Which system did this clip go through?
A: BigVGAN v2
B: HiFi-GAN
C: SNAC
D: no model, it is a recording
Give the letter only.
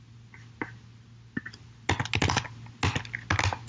D